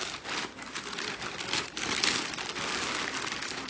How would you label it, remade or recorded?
recorded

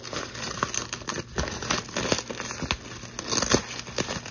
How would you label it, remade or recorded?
recorded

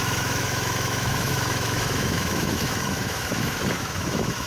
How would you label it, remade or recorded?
remade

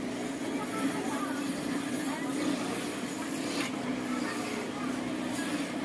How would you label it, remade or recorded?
recorded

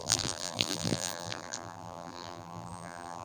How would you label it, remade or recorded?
remade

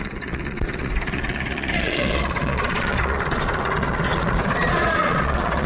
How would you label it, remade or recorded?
remade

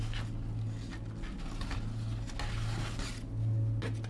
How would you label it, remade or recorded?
recorded